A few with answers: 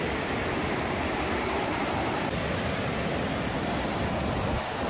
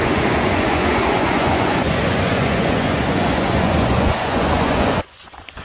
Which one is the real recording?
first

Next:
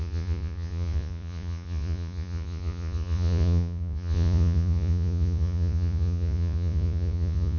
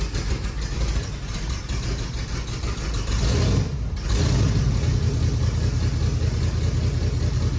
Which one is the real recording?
second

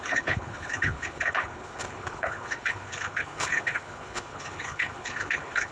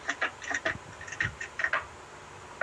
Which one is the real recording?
second